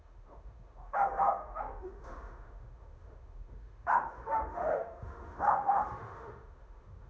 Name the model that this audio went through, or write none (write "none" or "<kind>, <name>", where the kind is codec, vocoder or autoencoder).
autoencoder, DAC-VAE